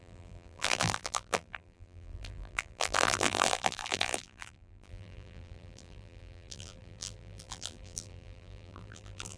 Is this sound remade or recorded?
remade